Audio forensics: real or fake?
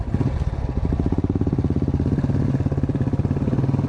real